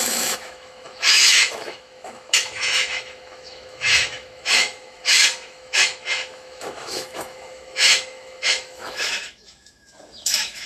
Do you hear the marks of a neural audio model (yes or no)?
yes